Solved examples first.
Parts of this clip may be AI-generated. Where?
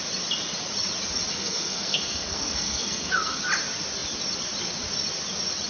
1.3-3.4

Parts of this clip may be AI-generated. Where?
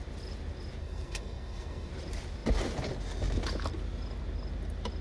0.8-1.9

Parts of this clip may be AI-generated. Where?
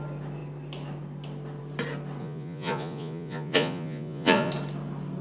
2.2-4.5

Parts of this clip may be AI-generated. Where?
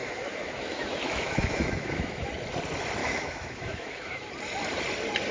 0.0-2.3; 3.0-4.3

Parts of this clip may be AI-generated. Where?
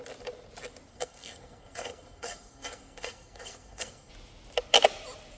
0.9-4.1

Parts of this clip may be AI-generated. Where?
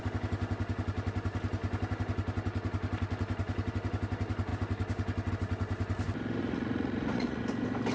6.4-7.4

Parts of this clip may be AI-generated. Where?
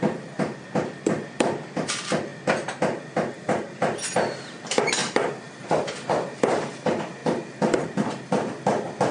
0.0-2.3; 3.3-9.1